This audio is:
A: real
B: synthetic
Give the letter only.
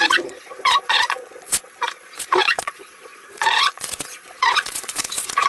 B